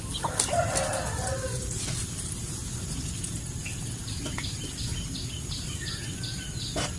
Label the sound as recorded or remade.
recorded